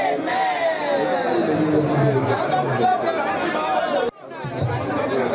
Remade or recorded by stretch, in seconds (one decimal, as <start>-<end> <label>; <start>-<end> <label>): 0.0-5.3 recorded